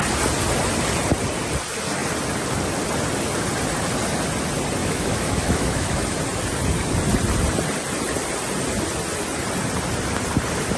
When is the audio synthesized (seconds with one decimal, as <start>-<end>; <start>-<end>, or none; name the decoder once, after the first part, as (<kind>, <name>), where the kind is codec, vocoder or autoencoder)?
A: 4.8-6.2 (autoencoder, DAC-VAE)